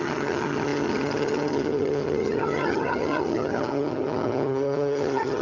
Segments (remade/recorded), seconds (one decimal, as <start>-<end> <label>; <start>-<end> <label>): 0.0-5.4 remade